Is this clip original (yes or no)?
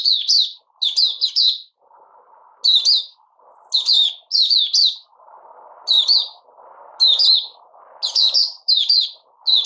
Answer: yes